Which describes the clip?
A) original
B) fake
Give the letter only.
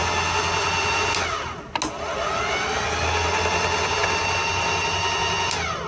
A